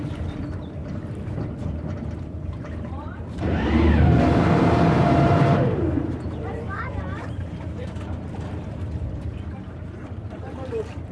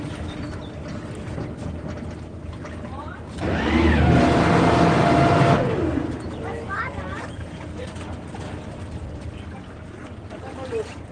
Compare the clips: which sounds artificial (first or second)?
first